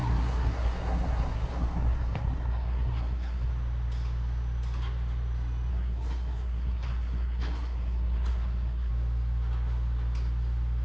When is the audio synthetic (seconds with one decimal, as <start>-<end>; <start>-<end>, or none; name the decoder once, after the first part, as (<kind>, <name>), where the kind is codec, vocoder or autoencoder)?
0.0-3.5 (codec, SNAC); 5.7-8.9

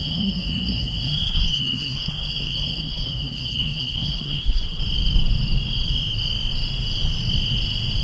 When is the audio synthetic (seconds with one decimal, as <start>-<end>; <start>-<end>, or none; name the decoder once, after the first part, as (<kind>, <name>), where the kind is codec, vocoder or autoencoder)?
0.0-4.8 (codec, SNAC)

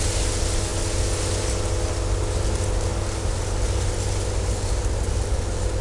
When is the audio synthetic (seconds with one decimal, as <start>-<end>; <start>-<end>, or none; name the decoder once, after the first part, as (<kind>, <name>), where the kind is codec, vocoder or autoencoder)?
none

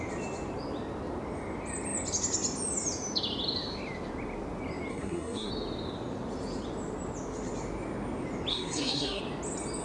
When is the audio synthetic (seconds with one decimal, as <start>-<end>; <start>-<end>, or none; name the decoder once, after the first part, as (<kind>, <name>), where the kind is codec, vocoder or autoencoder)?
4.9-5.5 (codec, SNAC); 8.5-9.2

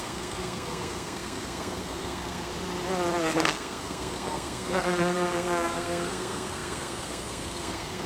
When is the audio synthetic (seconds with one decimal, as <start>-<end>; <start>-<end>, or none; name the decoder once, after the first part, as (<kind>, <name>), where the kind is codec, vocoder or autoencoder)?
0.0-2.5 (codec, SNAC); 3.2-8.1

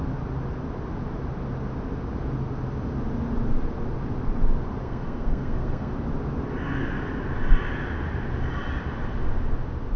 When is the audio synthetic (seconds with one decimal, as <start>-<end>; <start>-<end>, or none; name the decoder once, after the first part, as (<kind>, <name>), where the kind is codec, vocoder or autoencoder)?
4.8-5.9 (codec, SNAC)